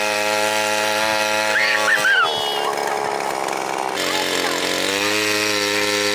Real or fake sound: real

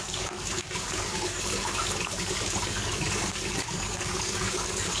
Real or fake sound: fake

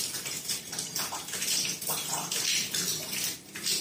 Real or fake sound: real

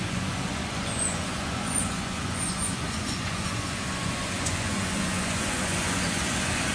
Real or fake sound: fake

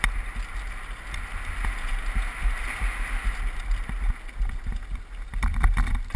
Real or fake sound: real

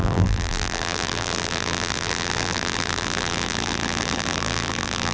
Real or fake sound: fake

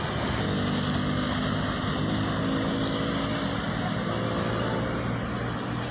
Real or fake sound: real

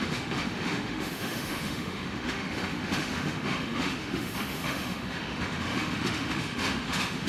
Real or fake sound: fake